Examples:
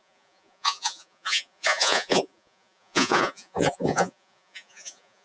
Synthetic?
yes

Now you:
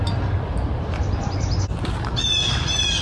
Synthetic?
no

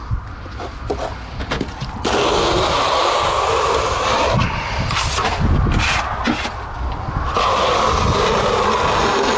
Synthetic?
no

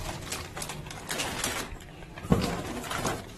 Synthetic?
no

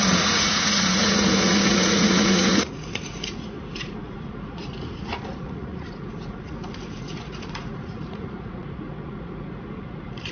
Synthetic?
yes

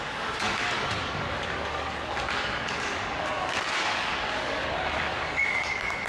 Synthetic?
yes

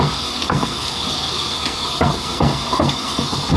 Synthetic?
yes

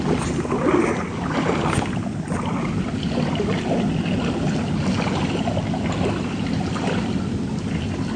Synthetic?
no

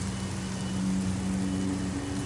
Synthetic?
no